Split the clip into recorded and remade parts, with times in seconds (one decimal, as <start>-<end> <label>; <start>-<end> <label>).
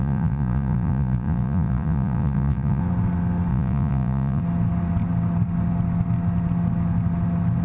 0.0-2.8 remade; 2.8-3.5 recorded; 3.5-4.4 remade; 4.4-7.6 recorded